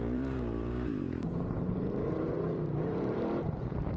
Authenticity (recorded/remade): remade